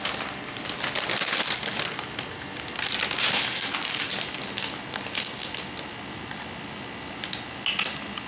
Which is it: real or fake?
real